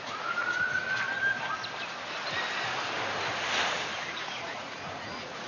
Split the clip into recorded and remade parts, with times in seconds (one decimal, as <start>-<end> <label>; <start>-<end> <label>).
0.0-0.8 remade; 0.8-4.1 recorded; 4.1-5.5 remade